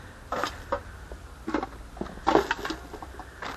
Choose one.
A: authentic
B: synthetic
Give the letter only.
A